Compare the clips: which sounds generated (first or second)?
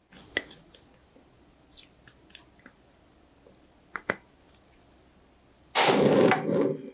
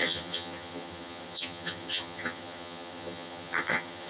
second